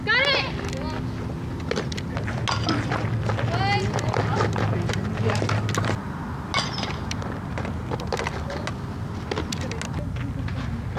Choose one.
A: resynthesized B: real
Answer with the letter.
B